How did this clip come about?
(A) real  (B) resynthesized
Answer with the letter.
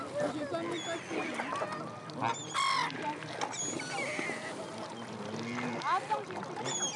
A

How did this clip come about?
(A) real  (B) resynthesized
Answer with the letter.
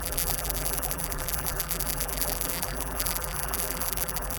B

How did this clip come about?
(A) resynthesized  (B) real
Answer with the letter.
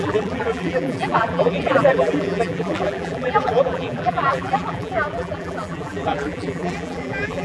A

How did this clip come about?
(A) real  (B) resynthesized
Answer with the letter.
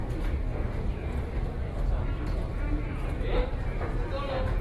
A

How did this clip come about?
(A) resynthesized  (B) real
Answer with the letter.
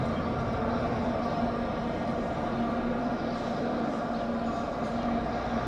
B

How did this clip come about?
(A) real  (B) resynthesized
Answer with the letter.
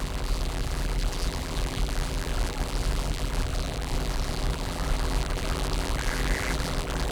B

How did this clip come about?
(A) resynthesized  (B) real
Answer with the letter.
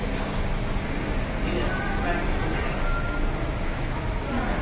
B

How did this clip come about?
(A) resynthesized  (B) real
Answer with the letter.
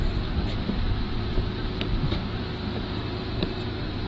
A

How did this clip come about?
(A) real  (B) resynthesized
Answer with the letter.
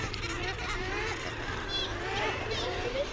B